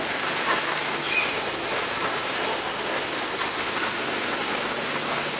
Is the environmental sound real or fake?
real